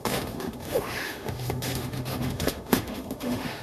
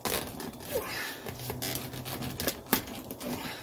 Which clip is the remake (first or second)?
first